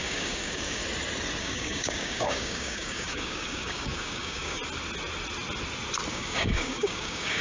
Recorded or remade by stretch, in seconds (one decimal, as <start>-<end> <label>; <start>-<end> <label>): 0.0-0.8 remade; 0.8-1.4 recorded; 1.4-4.6 remade; 4.6-6.1 recorded; 6.1-7.4 remade